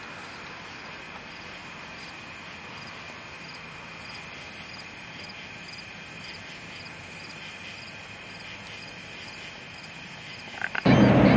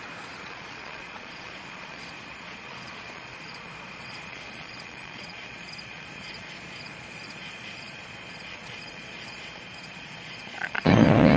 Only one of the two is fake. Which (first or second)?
second